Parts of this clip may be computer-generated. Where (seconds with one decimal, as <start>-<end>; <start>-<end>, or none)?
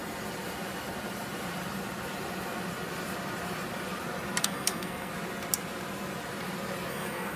4.4-5.1; 6.9-7.4